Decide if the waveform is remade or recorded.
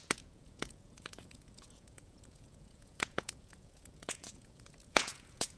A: remade